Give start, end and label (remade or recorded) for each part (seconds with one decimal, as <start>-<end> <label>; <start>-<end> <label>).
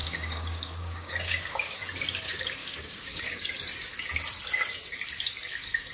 0.0-1.8 remade; 1.8-2.6 recorded; 2.6-3.4 remade; 3.4-5.9 recorded